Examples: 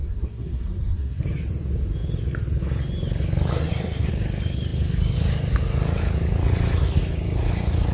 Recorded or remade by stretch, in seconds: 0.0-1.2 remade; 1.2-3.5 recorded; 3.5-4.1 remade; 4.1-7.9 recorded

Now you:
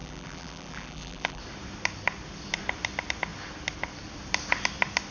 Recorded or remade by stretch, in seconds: 0.0-1.4 remade; 1.4-5.1 recorded

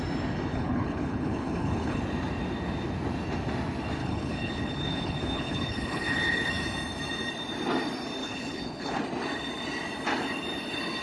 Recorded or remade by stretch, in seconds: 0.0-0.5 recorded; 0.5-2.0 remade; 2.0-4.0 recorded; 4.0-6.5 remade; 6.5-8.2 recorded; 8.2-9.0 remade; 9.0-11.0 recorded

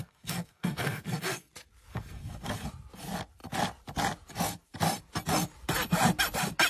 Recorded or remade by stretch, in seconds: 0.0-1.5 remade; 1.5-1.9 recorded; 1.9-2.5 remade; 2.5-6.7 recorded